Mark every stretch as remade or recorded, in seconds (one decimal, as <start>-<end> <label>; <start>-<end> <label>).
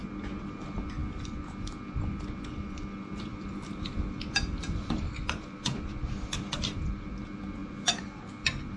0.0-3.3 recorded; 3.3-7.1 remade; 7.1-8.8 recorded